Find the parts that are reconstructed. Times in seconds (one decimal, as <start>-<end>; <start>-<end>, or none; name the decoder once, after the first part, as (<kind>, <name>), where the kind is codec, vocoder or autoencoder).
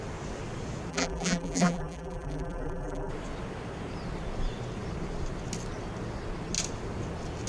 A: 0.9-3.1 (vocoder, BigVGAN v2)